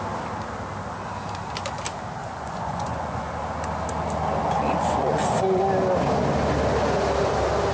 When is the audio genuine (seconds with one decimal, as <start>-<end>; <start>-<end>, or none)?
0.0-2.2; 3.3-4.4; 5.6-7.7